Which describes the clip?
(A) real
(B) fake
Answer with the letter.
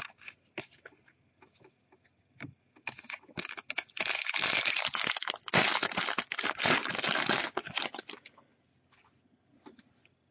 A